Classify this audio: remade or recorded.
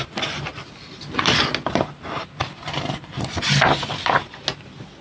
recorded